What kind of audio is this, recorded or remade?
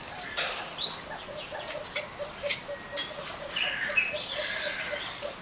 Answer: recorded